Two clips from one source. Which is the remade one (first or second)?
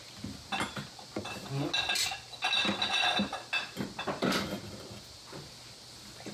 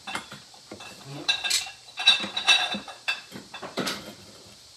second